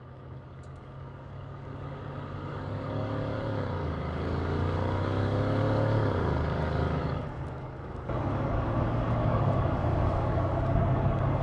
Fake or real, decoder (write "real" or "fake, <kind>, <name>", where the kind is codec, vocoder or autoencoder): fake, codec, DAC